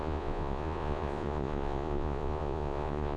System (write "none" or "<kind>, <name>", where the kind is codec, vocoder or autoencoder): vocoder, Vocos